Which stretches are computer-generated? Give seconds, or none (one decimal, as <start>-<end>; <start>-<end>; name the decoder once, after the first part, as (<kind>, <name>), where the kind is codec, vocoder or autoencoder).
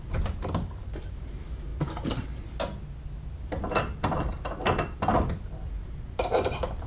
0.0-1.7 (vocoder, BigVGAN v2); 5.8-6.9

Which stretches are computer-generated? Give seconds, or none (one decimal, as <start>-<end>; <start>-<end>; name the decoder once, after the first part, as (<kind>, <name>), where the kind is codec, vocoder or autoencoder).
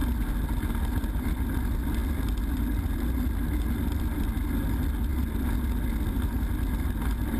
none